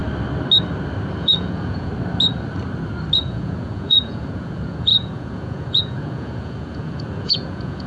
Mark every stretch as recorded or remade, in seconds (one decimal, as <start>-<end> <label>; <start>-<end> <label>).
0.0-1.1 recorded; 1.1-1.9 remade; 1.9-3.2 recorded; 3.2-7.9 remade